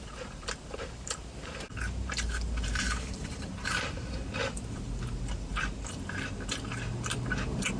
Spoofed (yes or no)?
yes